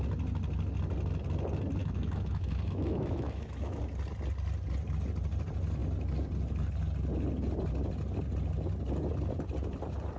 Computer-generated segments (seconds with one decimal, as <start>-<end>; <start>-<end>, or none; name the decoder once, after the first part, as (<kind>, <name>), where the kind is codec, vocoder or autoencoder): 1.8-3.8 (autoencoder, DAC-VAE)